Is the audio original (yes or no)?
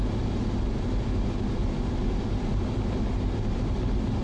yes